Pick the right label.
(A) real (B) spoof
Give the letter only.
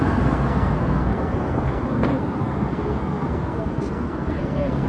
B